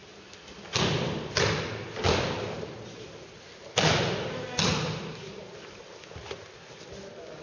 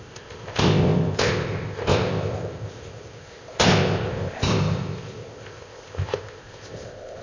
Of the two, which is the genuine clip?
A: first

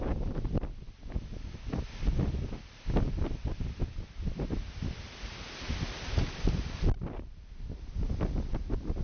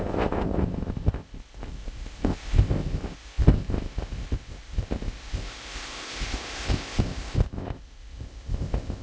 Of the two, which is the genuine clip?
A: first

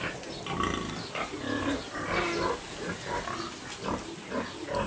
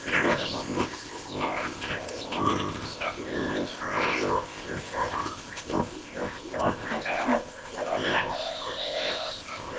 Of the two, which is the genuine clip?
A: first